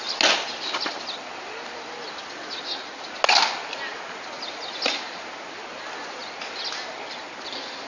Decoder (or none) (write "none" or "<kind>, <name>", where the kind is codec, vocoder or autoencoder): none